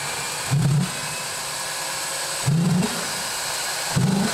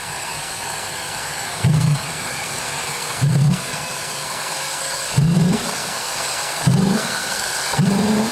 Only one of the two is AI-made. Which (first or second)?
second